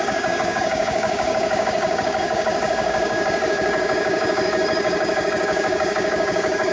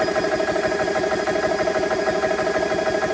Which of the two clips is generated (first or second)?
first